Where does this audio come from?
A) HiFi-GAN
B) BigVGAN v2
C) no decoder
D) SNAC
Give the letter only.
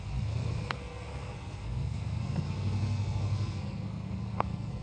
D